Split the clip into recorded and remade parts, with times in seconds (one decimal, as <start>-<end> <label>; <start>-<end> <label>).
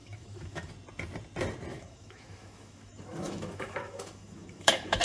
0.0-0.7 remade; 0.7-1.7 recorded; 1.7-5.0 remade